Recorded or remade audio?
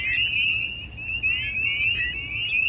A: recorded